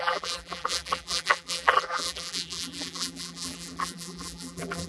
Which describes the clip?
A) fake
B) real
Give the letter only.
A